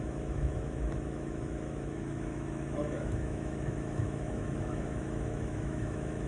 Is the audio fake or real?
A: fake